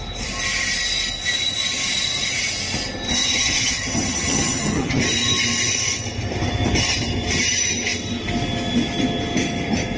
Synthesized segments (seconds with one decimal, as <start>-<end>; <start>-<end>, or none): 3.2-5.0